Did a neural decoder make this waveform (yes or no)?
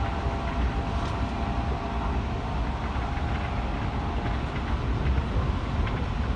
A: no